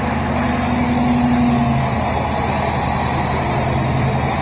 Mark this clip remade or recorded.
recorded